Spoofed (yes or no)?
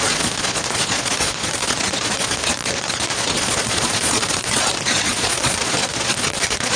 yes